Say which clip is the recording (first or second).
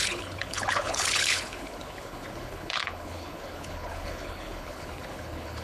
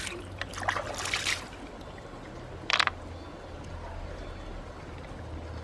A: second